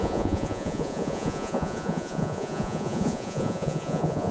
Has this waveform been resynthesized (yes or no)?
yes